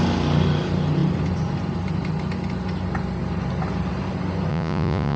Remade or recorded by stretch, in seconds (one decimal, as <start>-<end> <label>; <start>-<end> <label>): 0.0-4.5 recorded; 4.5-5.2 remade